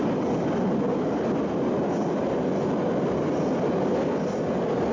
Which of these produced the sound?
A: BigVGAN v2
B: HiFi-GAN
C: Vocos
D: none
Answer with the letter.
D